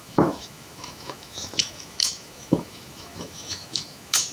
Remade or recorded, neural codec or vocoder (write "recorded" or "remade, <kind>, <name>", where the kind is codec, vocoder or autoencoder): remade, autoencoder, DAC-VAE